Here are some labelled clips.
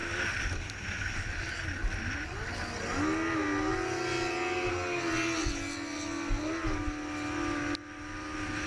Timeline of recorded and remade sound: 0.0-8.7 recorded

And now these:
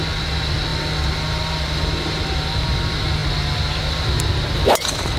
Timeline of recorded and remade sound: 0.0-0.7 recorded; 0.7-1.9 remade; 1.9-5.2 recorded

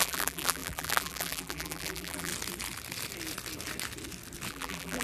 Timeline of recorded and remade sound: 0.0-2.3 remade; 2.3-4.5 recorded; 4.5-5.0 remade

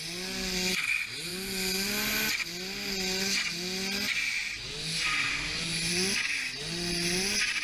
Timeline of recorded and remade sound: 0.0-7.6 recorded